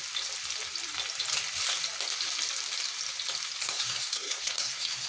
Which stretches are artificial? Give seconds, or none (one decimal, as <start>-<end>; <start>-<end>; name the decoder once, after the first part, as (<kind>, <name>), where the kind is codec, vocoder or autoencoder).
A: 3.6-5.1 (codec, SNAC)